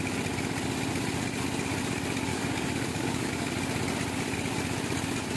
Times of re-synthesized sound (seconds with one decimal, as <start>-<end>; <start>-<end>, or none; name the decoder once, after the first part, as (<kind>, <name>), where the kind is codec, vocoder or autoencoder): 2.3-3.5 (codec, DAC)